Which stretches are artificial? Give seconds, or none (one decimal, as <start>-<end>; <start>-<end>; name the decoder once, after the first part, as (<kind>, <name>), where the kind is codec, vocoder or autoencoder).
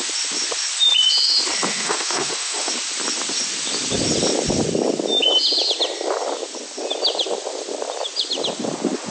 1.7-2.7 (autoencoder, DAC-VAE)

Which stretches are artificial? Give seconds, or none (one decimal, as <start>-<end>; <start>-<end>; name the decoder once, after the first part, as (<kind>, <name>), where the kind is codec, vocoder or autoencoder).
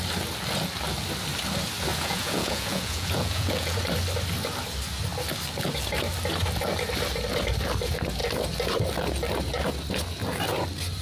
1.9-3.8 (vocoder, Vocos)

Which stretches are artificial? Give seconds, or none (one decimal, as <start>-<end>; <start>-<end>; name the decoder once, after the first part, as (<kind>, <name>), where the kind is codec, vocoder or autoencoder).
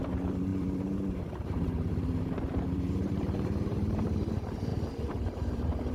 0.0-5.9 (vocoder, BigVGAN v2)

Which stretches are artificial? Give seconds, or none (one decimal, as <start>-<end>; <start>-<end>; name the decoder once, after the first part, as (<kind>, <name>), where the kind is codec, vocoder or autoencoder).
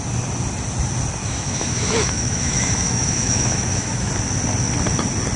1.2-4.1 (autoencoder, DAC-VAE)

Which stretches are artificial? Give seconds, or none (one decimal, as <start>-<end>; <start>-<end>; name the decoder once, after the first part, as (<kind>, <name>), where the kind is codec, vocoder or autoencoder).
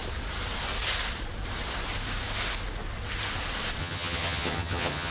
3.8-5.1 (vocoder, HiFi-GAN)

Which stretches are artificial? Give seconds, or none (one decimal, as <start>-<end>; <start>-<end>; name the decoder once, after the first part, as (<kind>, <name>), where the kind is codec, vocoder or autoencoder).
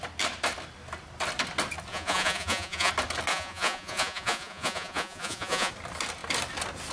1.9-2.9 (vocoder, Vocos); 3.3-5.7